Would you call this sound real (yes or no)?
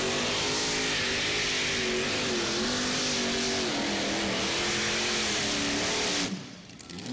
yes